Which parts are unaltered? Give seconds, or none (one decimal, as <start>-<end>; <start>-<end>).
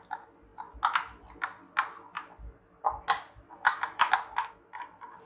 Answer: 0.0-3.5; 4.1-5.3